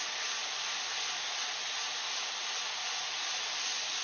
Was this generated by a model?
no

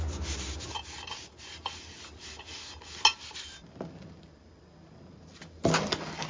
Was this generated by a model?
no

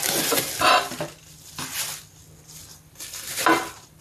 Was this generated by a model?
no